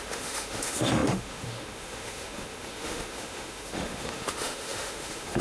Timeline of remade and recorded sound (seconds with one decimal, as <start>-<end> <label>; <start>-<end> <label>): 0.0-5.4 remade